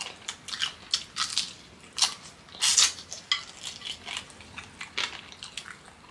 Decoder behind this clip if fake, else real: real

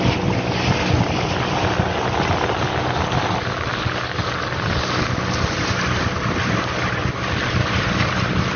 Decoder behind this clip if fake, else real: real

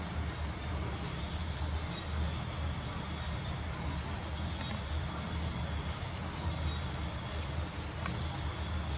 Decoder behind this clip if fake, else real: real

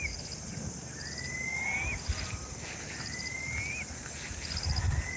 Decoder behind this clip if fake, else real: real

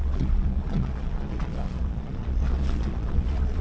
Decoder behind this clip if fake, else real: fake, vocoder, Vocos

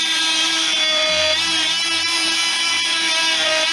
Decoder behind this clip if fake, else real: fake, vocoder, BigVGAN v2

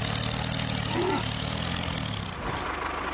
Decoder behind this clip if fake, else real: real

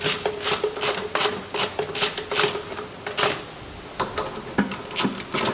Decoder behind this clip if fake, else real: real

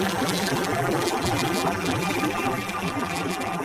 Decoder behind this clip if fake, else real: fake, vocoder, BigVGAN v2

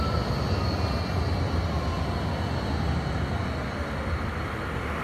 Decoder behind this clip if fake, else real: real